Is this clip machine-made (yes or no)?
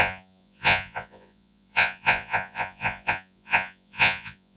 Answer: yes